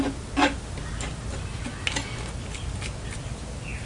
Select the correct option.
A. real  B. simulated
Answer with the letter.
A